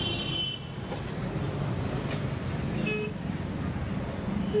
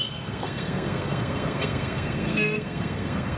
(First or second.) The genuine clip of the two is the first